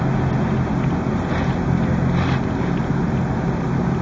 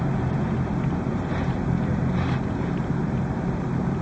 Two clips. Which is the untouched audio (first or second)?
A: first